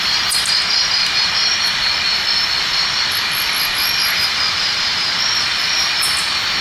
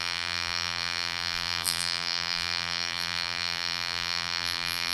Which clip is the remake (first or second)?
second